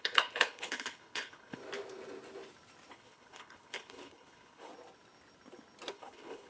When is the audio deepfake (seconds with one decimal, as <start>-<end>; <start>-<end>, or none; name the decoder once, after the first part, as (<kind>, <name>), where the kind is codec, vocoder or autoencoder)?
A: 0.0-1.6 (codec, HILCodec); 2.9-4.7; 5.9-6.5